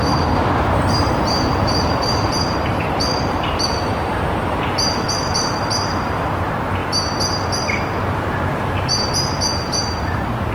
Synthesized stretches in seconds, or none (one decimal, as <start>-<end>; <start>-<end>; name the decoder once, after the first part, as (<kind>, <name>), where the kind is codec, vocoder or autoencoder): 0.0-6.8 (vocoder, BigVGAN v2); 7.9-10.5